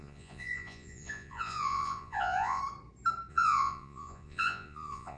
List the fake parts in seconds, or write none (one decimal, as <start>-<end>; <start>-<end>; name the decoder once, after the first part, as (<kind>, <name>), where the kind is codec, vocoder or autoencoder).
0.0-2.6 (vocoder, Vocos); 3.3-5.2